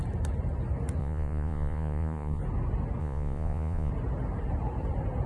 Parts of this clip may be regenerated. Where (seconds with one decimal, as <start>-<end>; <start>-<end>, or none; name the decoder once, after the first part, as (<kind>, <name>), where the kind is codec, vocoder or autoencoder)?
1.0-2.4 (vocoder, Vocos); 3.0-3.9